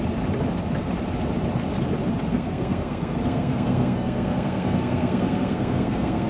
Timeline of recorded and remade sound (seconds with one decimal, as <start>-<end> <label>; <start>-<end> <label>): 0.0-2.3 recorded; 2.3-6.3 remade